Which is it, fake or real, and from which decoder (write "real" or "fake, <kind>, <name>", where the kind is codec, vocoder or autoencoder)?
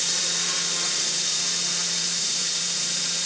fake, vocoder, Vocos